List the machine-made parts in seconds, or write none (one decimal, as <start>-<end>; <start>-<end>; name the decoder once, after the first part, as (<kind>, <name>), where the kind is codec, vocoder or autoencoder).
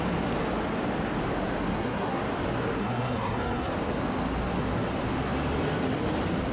1.7-2.2 (codec, SNAC); 2.8-3.7